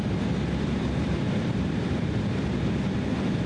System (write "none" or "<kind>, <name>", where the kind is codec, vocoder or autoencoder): vocoder, BigVGAN v2